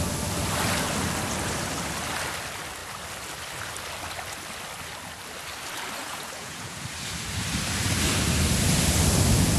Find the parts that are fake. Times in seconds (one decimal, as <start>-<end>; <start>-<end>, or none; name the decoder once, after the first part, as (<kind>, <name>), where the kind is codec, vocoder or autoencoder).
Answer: 6.0-6.8 (vocoder, Vocos)